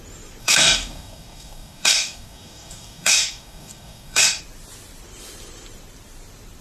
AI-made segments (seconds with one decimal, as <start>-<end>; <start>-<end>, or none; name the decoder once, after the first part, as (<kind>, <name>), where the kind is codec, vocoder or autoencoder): 0.4-4.4 (codec, DAC)

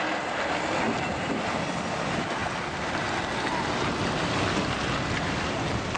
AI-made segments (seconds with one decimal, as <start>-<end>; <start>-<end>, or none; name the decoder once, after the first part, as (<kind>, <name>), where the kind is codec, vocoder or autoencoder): none